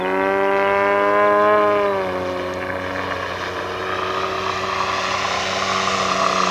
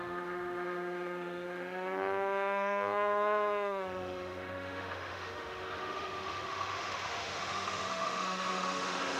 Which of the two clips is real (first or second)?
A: first